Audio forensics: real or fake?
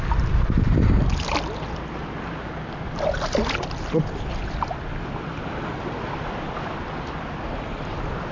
real